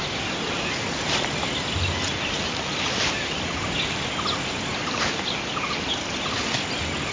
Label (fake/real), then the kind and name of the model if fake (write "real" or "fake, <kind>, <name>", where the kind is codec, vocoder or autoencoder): real